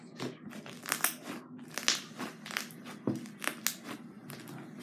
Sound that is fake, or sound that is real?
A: real